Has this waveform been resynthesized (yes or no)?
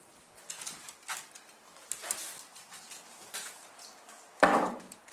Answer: no